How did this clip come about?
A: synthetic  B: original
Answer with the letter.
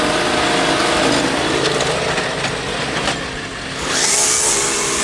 B